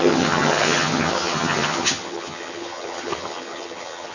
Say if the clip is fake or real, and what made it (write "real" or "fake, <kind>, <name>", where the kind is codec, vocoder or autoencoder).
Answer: fake, vocoder, HiFi-GAN